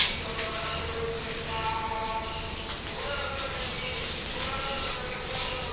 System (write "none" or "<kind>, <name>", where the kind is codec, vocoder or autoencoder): none